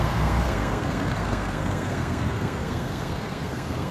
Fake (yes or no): yes